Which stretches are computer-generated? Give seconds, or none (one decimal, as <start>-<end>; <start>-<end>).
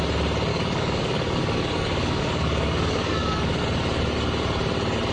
0.5-3.6